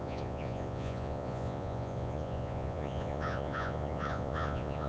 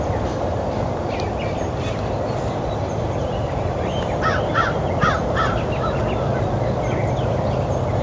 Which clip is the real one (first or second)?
second